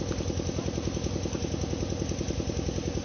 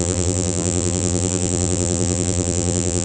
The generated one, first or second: second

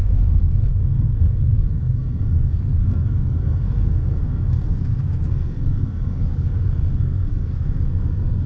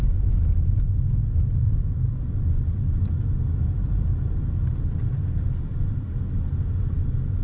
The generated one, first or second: first